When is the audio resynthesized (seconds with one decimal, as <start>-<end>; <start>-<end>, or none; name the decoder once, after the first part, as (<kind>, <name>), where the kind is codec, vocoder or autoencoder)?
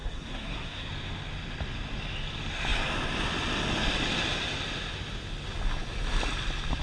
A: 0.0-0.9 (codec, SNAC)